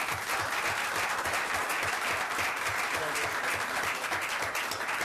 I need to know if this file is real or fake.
real